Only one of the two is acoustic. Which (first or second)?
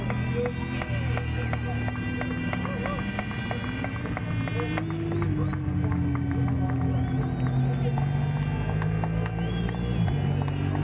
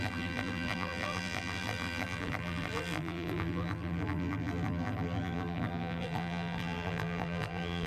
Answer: first